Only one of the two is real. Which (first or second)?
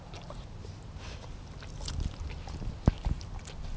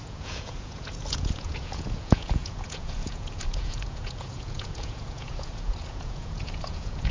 first